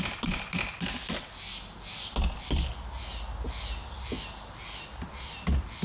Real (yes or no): yes